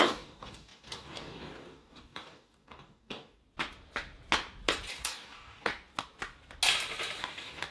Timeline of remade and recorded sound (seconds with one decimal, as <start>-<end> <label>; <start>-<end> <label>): 0.0-3.4 remade; 3.4-4.9 recorded; 4.9-5.7 remade; 5.7-7.2 recorded; 7.2-7.7 remade